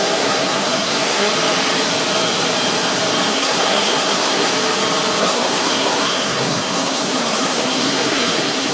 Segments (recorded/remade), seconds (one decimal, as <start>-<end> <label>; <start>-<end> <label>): 0.0-1.3 remade; 1.3-3.3 recorded; 3.3-4.5 remade; 4.5-5.2 recorded; 5.2-8.7 remade